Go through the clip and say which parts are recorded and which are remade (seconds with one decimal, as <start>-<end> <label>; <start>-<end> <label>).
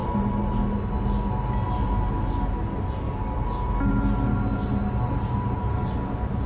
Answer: 0.0-6.5 recorded